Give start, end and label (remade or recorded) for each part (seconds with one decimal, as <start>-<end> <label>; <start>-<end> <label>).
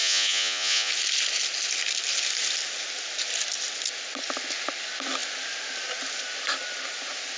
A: 0.0-0.9 remade; 0.9-7.4 recorded